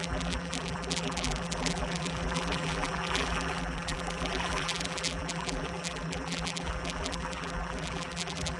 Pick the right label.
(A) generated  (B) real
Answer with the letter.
A